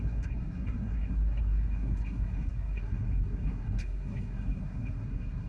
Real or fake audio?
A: fake